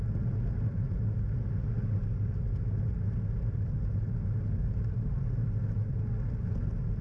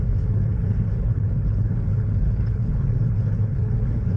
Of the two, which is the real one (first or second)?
first